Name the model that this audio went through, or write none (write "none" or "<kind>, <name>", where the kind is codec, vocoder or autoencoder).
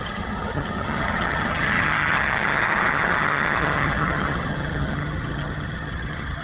vocoder, HiFi-GAN